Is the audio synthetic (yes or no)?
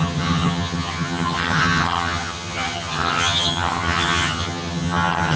yes